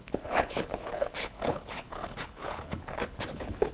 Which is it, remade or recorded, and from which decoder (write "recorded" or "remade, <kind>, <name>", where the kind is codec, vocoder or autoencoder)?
remade, codec, HILCodec